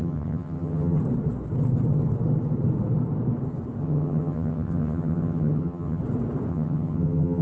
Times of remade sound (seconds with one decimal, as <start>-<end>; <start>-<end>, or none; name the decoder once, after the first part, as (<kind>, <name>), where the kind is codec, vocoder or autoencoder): 0.0-1.0 (vocoder, HiFi-GAN); 3.8-6.0; 6.5-7.4